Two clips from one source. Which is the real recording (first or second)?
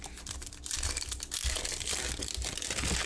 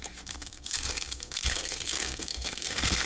first